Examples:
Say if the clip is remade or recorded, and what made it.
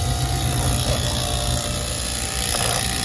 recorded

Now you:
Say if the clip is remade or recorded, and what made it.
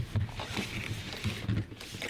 recorded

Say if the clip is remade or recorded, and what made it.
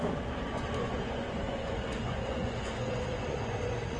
remade, vocoder, Vocos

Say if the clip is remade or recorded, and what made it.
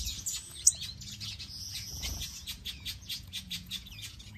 remade, vocoder, Vocos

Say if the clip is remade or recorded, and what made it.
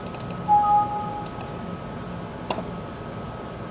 recorded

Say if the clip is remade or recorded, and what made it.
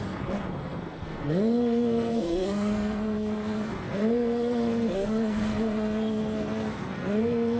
remade, codec, SNAC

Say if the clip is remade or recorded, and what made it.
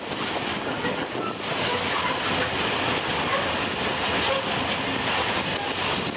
recorded